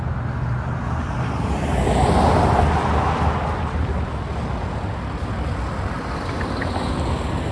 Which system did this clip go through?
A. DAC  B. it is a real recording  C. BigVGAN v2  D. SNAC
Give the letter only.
B